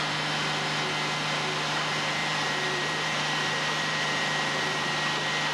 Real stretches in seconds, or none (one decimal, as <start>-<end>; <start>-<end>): 0.0-2.2; 4.9-5.5